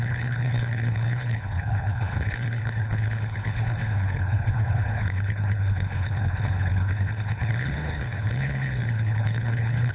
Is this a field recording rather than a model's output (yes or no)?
no